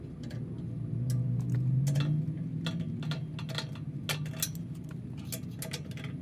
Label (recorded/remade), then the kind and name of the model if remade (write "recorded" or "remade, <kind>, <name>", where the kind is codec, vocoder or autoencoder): recorded